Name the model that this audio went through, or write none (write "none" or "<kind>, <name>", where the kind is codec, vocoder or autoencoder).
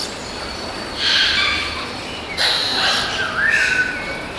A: none